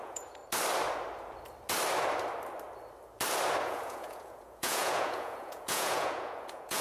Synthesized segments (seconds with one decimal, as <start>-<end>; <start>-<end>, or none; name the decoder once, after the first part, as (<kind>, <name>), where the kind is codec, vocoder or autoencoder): 0.0-0.4 (vocoder, Vocos); 3.6-6.8